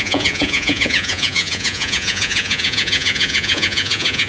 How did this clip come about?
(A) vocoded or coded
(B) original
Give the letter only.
A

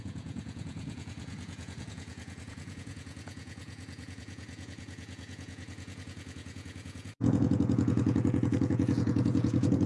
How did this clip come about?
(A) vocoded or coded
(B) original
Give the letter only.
A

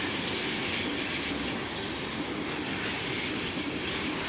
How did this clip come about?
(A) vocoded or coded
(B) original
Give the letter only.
B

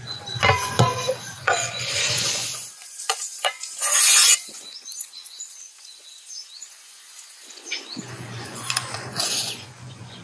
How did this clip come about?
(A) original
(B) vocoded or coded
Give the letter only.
B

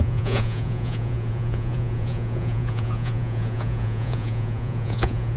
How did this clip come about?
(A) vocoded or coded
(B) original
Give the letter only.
A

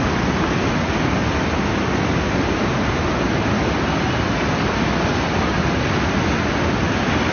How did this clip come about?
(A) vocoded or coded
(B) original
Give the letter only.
B